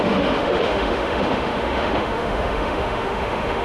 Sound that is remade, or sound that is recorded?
remade